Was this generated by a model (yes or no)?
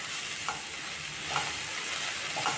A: no